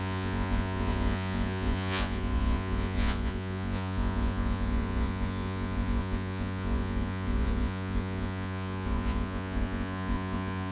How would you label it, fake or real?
fake